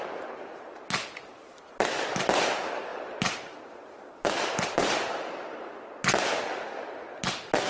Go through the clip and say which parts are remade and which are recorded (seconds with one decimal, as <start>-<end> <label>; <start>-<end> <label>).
0.0-2.9 recorded; 2.9-5.8 remade; 5.8-7.7 recorded